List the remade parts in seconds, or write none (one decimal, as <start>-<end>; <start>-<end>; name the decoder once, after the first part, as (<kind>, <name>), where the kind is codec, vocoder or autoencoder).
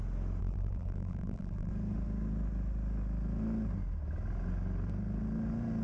0.4-1.7 (vocoder, BigVGAN v2)